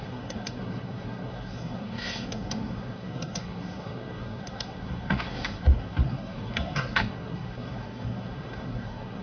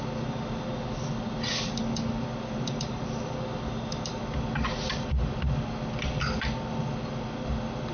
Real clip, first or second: second